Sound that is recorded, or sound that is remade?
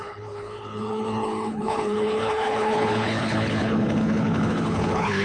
remade